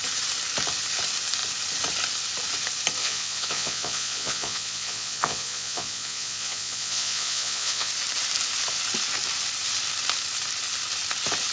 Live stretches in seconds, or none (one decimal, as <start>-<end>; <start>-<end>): 0.0-3.0; 7.9-11.5